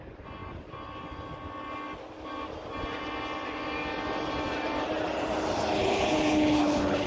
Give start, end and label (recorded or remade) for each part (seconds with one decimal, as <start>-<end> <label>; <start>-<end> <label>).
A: 0.0-5.8 recorded; 5.8-7.1 remade